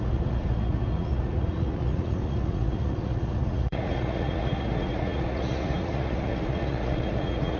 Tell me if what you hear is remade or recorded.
remade